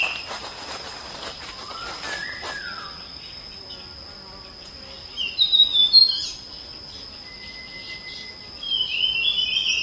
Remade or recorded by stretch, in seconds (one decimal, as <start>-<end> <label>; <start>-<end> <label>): 0.0-9.8 recorded